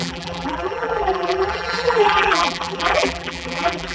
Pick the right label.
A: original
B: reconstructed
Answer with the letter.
B